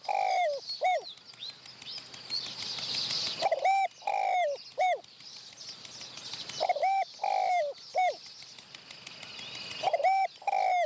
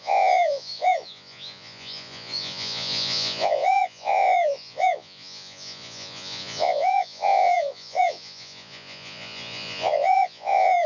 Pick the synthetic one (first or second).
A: second